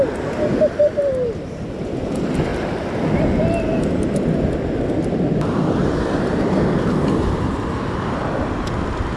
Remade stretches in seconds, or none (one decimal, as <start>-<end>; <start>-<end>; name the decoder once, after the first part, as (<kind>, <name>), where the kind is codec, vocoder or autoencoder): none

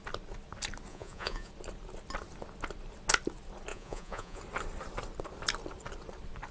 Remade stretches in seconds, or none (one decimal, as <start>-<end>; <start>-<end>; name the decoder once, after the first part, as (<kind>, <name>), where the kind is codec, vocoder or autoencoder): 0.9-1.5 (vocoder, Vocos); 3.7-4.4

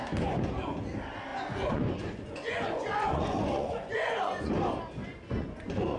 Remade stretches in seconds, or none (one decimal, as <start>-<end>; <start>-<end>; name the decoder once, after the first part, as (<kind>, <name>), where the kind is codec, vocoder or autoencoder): 1.3-4.5 (vocoder, Vocos); 5.0-6.0

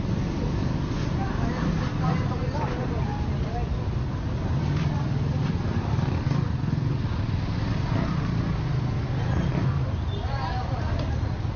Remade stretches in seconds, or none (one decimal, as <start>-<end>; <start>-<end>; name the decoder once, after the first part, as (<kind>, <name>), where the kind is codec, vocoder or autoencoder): none